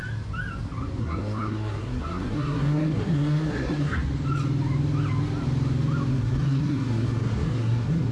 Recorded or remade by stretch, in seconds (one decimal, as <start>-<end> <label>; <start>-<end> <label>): 0.0-1.0 recorded; 1.0-4.0 remade; 4.0-6.1 recorded; 6.1-8.1 remade